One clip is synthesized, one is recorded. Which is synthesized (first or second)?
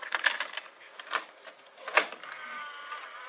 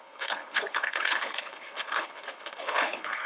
second